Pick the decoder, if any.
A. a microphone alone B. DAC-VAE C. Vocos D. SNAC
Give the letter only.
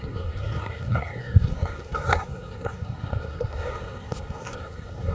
D